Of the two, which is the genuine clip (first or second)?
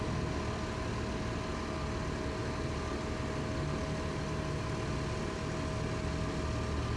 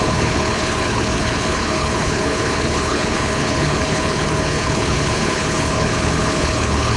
first